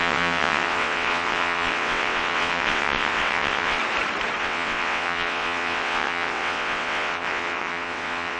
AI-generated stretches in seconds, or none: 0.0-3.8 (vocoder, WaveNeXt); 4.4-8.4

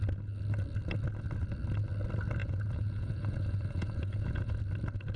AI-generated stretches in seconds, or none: 2.4-4.6 (vocoder, Vocos)

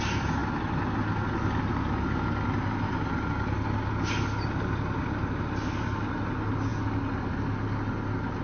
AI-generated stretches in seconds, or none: none

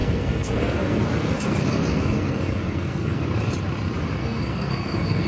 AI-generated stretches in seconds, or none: 0.0-3.2 (codec, SNAC); 4.2-5.3

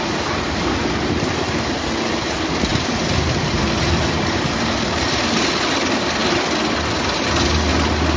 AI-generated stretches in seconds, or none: 2.7-5.1 (vocoder, BigVGAN v2)

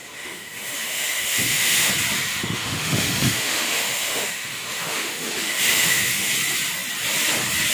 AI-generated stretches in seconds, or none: 0.0-1.9 (autoencoder, DAC-VAE); 2.3-6.3

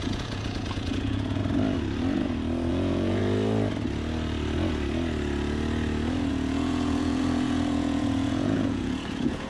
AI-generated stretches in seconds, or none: 0.0-1.4 (vocoder, Vocos); 2.7-3.2; 6.3-9.5